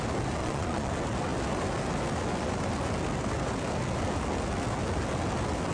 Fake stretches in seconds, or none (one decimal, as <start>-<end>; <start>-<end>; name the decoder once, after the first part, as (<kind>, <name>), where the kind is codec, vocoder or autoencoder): 0.4-0.9 (vocoder, Vocos)